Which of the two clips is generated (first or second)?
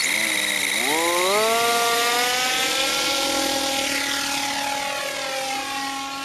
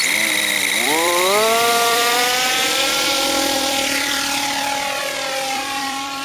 second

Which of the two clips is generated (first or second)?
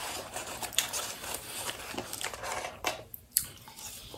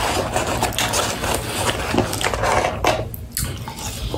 first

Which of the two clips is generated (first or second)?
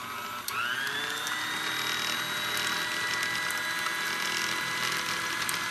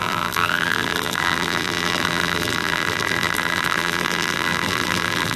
second